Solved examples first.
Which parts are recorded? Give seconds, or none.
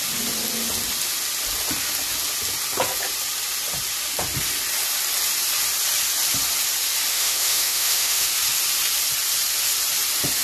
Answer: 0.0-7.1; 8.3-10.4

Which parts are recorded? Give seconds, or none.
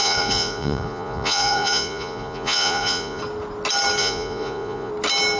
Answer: 3.2-4.0; 4.9-5.4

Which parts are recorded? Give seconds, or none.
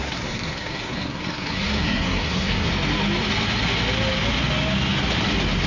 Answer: 2.7-5.7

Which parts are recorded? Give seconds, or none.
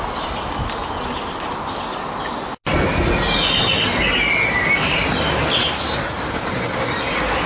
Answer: 0.0-5.0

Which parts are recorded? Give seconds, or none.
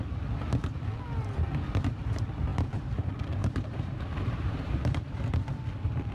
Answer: 0.0-2.5; 3.0-3.4; 5.3-6.1